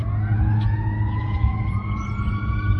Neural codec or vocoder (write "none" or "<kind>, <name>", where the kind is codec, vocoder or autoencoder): vocoder, Vocos